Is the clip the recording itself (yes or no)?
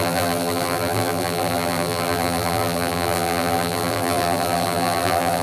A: no